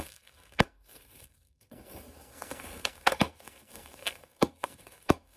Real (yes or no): no